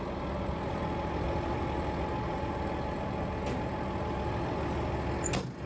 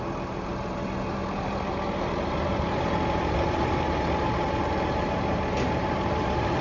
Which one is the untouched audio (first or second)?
first